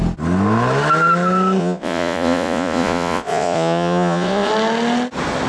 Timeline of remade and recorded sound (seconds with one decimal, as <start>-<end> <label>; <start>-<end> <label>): 0.0-1.6 recorded; 1.6-4.5 remade; 4.5-5.5 recorded